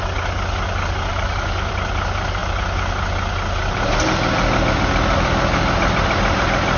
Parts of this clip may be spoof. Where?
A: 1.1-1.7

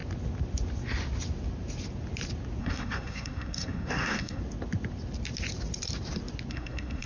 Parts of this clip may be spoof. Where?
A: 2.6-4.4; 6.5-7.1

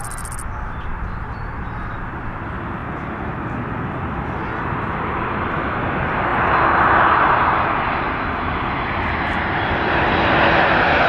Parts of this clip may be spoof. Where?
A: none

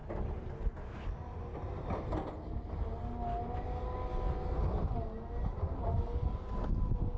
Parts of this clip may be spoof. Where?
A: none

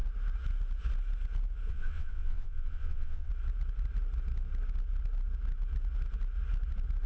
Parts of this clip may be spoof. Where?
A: 1.7-3.3

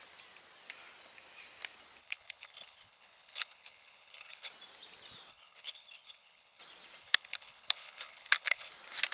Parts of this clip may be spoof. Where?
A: 2.0-4.5; 5.3-6.6; 7.0-8.7

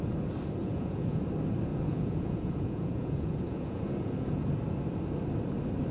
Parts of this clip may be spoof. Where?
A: 0.6-1.2; 1.7-4.5

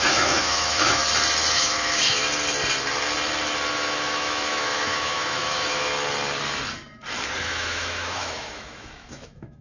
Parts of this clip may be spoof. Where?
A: 0.0-1.0; 1.5-2.2; 3.7-5.9; 7.4-9.6